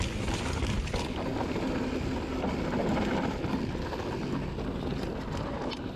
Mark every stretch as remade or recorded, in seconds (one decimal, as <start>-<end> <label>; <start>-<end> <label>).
0.0-6.0 recorded